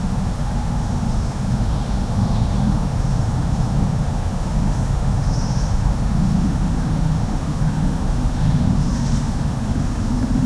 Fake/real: fake